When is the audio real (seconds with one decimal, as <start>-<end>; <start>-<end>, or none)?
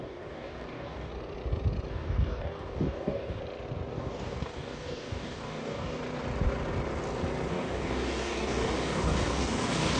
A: 1.1-1.9; 3.4-3.9; 6.0-7.5